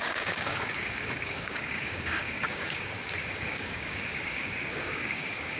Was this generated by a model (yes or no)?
yes